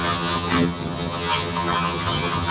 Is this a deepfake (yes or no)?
yes